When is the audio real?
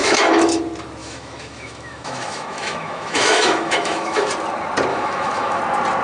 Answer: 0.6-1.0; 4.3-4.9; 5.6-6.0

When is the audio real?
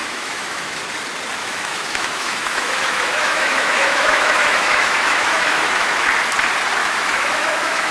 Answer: 0.8-1.4; 6.1-6.8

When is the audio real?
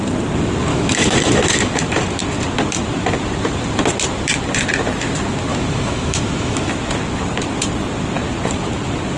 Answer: 0.0-0.7; 1.7-5.5; 6.7-9.2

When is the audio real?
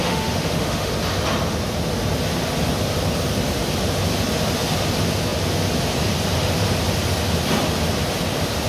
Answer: 0.9-8.7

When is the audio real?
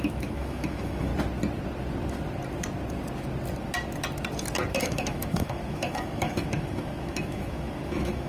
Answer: 1.1-4.8